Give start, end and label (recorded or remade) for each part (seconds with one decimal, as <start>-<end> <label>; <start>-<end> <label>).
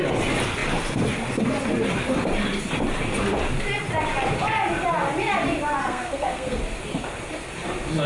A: 0.0-5.8 recorded; 5.8-6.6 remade; 6.6-8.1 recorded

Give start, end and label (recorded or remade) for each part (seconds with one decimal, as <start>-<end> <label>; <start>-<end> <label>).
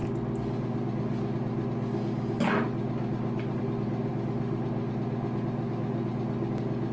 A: 0.0-6.9 recorded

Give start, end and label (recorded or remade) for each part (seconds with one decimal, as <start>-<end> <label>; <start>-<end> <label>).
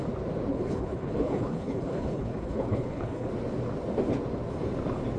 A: 0.0-0.5 recorded; 0.5-3.3 remade; 3.3-5.2 recorded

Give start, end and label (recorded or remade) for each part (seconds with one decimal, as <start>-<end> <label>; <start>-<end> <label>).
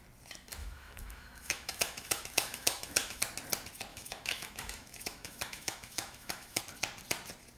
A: 0.0-0.6 recorded; 0.6-3.2 remade; 3.2-3.9 recorded; 3.9-6.6 remade; 6.6-7.6 recorded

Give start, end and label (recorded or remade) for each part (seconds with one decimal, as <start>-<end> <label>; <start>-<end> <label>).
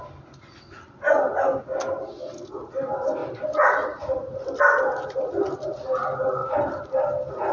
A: 0.0-3.2 recorded; 3.2-4.6 remade; 4.6-6.4 recorded; 6.4-7.5 remade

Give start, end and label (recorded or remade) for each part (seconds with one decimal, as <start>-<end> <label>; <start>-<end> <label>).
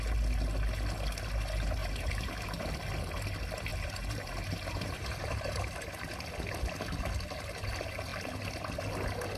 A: 0.0-1.8 recorded; 1.8-2.6 remade; 2.6-3.7 recorded; 3.7-5.6 remade; 5.6-9.4 recorded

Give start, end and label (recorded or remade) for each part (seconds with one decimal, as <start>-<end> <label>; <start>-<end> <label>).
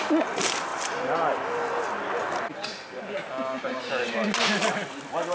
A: 0.0-3.3 recorded; 3.3-3.8 remade; 3.8-5.3 recorded